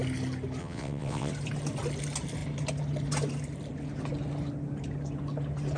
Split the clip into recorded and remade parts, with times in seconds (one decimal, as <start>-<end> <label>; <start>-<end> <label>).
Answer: 0.0-0.6 recorded; 0.6-1.3 remade; 1.3-5.8 recorded